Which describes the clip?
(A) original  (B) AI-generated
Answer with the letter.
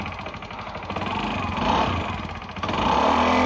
A